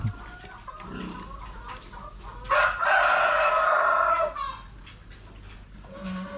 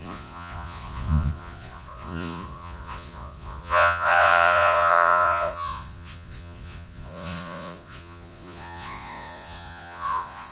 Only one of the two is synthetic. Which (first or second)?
second